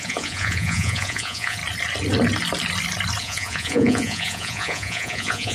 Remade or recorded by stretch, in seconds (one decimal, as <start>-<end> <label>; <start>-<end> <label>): 0.0-1.6 remade; 1.6-3.2 recorded; 3.2-5.5 remade